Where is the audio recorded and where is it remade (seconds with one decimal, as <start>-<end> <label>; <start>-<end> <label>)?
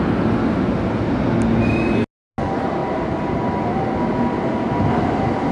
0.0-5.5 recorded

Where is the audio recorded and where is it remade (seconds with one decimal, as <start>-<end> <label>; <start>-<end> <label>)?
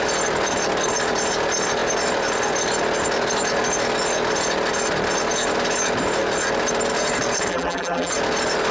0.0-7.5 recorded; 7.5-8.1 remade; 8.1-8.7 recorded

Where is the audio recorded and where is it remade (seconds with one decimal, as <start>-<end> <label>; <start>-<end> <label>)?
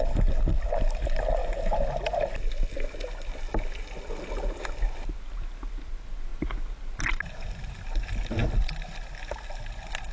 0.0-10.1 recorded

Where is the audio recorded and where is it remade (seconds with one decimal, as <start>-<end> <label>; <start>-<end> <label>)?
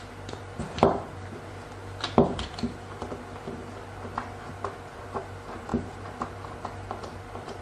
0.0-3.6 remade; 3.6-4.5 recorded; 4.5-5.7 remade; 5.7-7.0 recorded; 7.0-7.6 remade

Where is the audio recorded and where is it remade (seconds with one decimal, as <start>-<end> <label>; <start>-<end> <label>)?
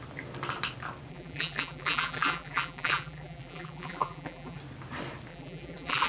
0.0-1.1 recorded; 1.1-4.6 remade; 4.6-5.3 recorded; 5.3-6.1 remade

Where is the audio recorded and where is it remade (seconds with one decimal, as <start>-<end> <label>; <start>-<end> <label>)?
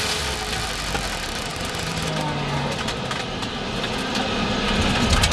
0.0-5.3 recorded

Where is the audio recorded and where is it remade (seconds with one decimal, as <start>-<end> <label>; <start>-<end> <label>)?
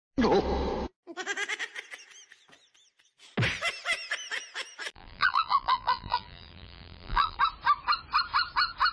0.0-4.9 recorded; 4.9-7.4 remade; 7.4-8.9 recorded